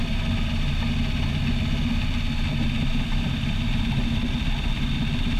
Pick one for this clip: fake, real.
real